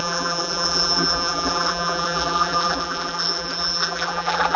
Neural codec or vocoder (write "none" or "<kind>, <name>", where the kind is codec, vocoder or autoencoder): vocoder, BigVGAN v2